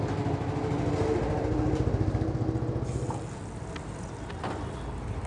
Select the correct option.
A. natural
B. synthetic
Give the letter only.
A